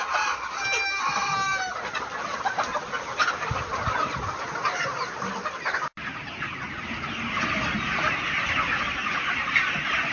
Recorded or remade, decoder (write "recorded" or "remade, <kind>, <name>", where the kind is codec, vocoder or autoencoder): recorded